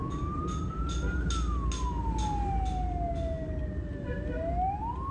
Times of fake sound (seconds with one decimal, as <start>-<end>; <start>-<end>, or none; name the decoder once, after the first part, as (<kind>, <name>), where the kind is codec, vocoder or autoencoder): none